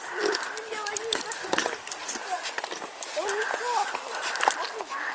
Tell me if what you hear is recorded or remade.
recorded